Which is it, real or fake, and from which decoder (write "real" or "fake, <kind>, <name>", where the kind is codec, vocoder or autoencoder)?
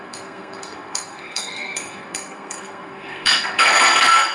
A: fake, codec, SNAC